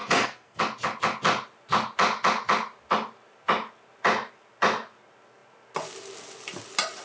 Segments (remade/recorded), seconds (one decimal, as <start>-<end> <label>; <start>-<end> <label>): 0.0-0.6 remade; 0.6-7.0 recorded